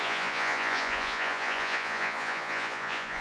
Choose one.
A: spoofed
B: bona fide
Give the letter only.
A